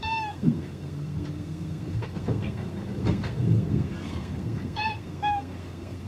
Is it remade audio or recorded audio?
remade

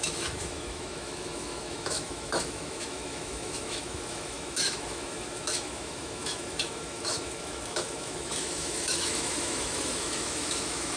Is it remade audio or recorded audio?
remade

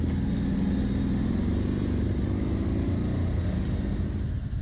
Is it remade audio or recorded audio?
recorded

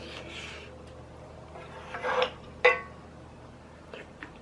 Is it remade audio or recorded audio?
recorded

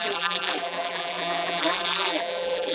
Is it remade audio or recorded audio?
remade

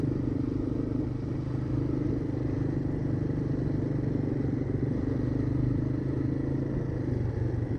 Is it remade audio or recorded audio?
recorded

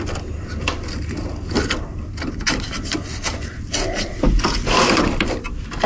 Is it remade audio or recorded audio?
recorded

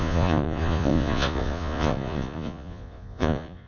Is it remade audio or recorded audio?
remade